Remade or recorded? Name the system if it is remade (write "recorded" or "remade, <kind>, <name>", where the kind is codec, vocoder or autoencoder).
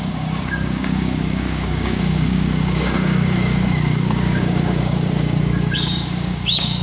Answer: remade, codec, DAC